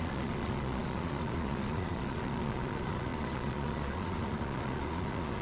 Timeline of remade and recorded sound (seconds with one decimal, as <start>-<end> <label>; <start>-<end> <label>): 0.0-5.4 remade